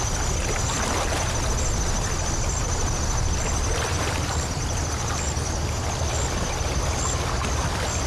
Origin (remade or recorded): recorded